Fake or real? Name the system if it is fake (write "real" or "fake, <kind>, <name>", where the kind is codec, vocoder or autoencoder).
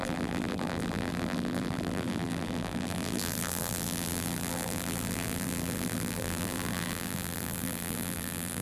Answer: fake, vocoder, BigVGAN v2